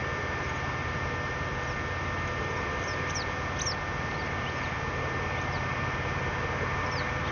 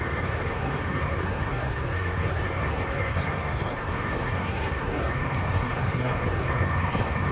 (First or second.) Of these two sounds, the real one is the first